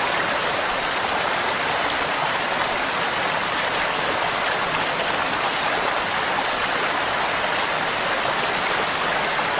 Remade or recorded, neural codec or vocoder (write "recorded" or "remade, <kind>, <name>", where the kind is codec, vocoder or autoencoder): recorded